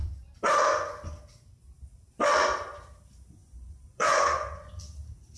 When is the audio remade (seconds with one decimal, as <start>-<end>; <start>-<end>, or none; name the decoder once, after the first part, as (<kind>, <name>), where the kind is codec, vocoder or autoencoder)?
3.4-4.7 (vocoder, Vocos)